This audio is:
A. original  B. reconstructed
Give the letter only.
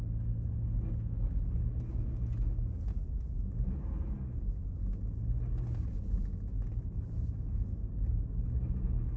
A